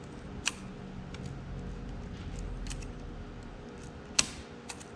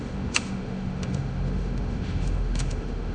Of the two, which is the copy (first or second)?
second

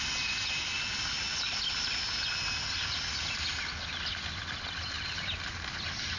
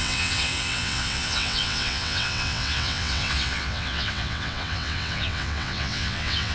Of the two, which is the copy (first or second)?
second